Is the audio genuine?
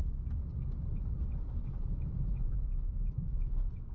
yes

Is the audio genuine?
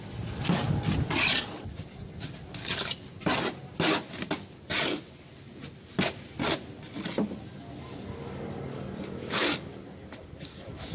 yes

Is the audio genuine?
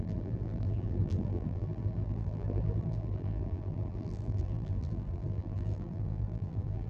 no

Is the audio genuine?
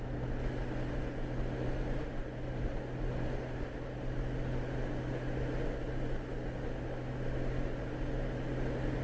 yes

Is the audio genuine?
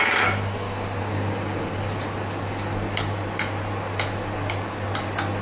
yes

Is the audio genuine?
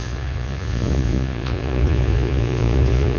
no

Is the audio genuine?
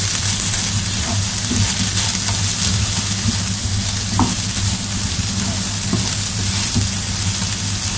yes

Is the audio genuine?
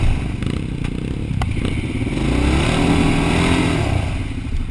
yes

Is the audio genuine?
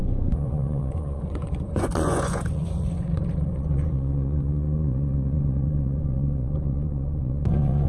no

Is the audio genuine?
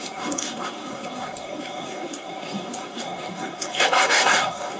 no